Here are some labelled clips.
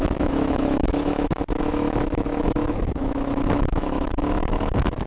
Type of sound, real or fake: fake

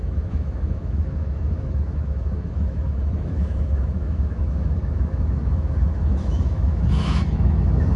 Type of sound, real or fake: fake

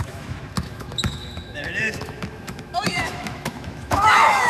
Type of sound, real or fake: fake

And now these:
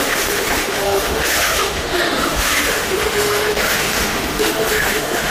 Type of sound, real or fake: fake